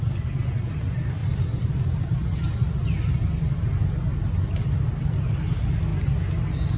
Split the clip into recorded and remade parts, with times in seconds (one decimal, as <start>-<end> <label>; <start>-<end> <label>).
0.0-1.2 recorded; 1.2-2.5 remade; 2.5-6.8 recorded